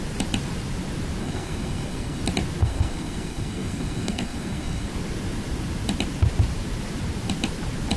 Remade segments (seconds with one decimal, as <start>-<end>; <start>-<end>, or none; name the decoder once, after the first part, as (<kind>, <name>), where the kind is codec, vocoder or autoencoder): 1.2-2.2 (codec, SNAC); 2.6-4.9

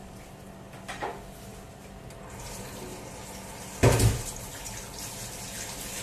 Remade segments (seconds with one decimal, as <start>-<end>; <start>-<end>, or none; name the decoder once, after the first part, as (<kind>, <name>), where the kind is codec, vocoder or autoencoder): none

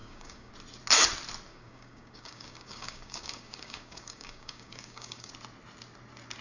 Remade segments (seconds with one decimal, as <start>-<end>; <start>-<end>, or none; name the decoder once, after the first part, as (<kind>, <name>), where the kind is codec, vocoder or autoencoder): 0.0-0.5 (codec, DAC); 1.5-5.3

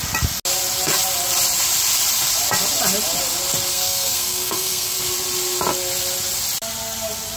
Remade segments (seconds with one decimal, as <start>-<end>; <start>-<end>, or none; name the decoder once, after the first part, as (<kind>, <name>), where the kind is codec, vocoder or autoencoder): 3.7-5.0 (codec, SNAC)

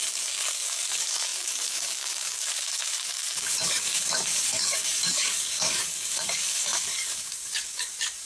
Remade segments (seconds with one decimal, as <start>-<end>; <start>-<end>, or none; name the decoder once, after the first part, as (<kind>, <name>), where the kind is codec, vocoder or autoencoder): 0.0-8.3 (codec, DAC)

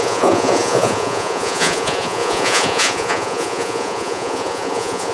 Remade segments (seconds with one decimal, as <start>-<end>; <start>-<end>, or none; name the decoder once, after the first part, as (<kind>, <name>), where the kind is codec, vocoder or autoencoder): 0.0-5.1 (vocoder, Vocos)

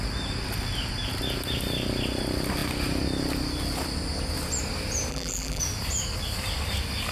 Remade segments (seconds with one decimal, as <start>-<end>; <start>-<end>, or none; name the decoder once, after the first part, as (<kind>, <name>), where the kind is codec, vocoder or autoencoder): 5.1-5.6 (vocoder, BigVGAN v2)

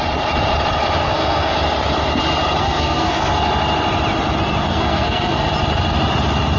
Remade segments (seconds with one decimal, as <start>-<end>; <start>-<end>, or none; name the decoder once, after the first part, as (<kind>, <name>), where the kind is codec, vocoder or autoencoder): 1.0-1.5 (codec, SNAC); 2.6-3.3; 4.7-5.4